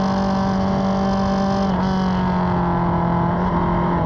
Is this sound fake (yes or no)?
no